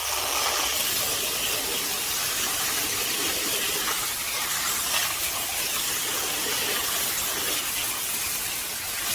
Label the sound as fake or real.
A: real